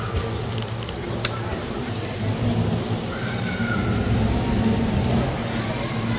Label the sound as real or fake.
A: real